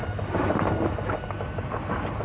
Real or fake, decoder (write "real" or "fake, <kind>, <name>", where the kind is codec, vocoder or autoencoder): real